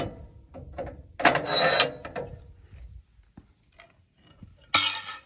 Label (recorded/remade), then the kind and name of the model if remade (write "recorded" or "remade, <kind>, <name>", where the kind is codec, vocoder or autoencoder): recorded